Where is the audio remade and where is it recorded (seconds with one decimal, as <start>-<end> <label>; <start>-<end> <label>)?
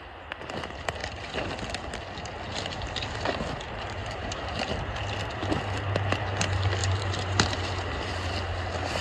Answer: 0.0-4.0 recorded; 4.0-4.8 remade; 4.8-6.8 recorded; 6.8-7.5 remade; 7.5-9.0 recorded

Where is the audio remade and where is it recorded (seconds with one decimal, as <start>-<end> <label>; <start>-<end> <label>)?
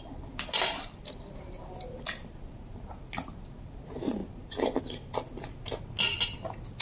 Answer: 0.0-6.8 recorded